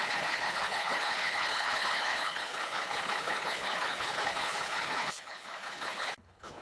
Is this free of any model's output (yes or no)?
no